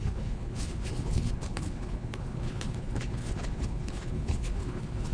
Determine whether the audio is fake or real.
fake